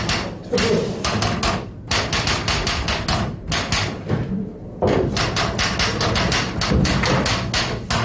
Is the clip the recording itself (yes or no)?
yes